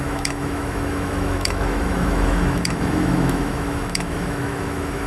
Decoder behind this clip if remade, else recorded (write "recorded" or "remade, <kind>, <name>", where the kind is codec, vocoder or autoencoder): remade, autoencoder, DAC-VAE